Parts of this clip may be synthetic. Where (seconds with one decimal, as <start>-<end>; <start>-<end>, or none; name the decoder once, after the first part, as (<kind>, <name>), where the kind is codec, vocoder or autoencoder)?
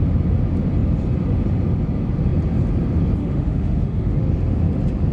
3.2-4.3 (autoencoder, DAC-VAE)